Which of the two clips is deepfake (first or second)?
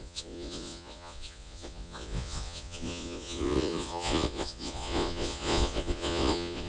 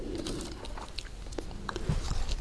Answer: first